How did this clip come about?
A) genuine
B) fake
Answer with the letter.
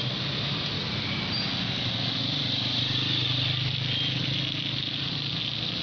A